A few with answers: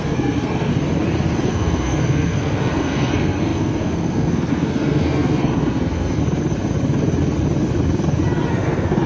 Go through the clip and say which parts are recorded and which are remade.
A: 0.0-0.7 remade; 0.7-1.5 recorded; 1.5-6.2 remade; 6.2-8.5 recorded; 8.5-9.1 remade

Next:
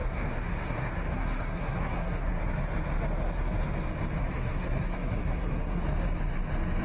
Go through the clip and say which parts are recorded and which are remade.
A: 0.0-2.4 remade; 2.4-4.2 recorded; 4.2-5.8 remade; 5.8-6.8 recorded

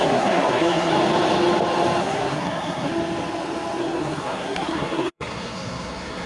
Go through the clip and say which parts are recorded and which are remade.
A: 0.0-0.9 remade; 0.9-2.0 recorded; 2.0-2.9 remade; 2.9-3.8 recorded; 3.8-6.3 remade